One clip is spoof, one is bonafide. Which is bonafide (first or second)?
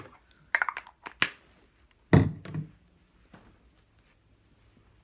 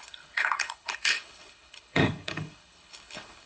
first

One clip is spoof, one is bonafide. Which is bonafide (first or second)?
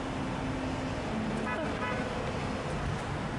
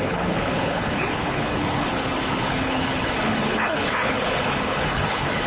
first